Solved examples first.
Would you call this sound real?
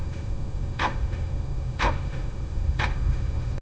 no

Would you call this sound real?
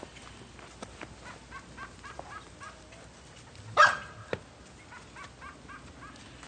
yes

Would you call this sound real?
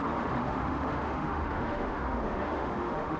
no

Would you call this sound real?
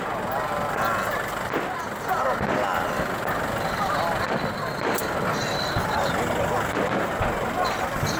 yes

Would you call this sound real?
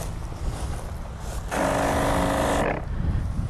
yes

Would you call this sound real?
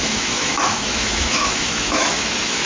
no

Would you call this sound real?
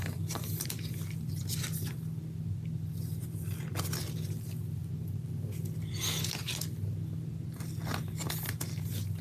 yes